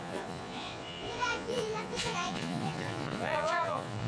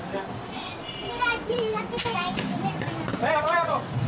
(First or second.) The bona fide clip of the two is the second